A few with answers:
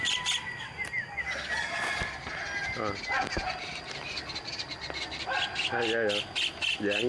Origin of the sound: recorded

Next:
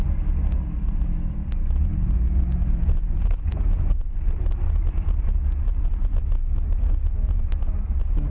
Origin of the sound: recorded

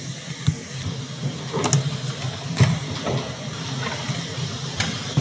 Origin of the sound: recorded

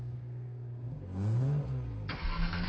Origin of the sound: remade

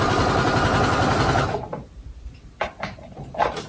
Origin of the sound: recorded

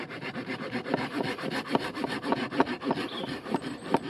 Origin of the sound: recorded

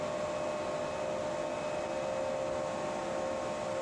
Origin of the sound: recorded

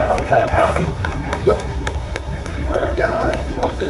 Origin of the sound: remade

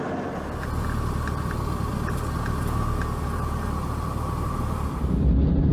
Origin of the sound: recorded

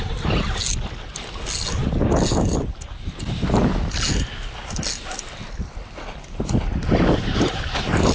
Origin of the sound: recorded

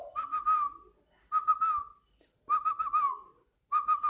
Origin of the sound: recorded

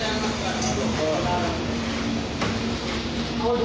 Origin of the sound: recorded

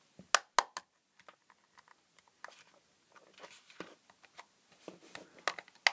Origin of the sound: recorded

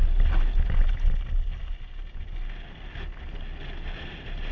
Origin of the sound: recorded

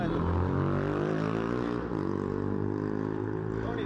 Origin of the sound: recorded